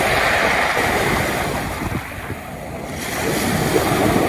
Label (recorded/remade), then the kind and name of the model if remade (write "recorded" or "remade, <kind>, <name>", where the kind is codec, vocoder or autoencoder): recorded